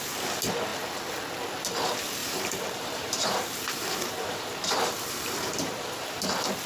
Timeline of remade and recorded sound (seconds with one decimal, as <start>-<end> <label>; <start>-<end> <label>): 0.0-2.2 recorded; 2.2-6.2 remade; 6.2-6.7 recorded